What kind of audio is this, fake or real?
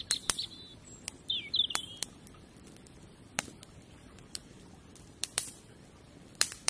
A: fake